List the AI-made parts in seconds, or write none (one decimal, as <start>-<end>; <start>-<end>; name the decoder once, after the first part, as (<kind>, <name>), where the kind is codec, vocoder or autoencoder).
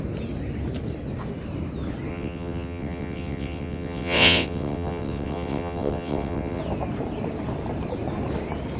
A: 2.1-6.6 (vocoder, WaveNeXt)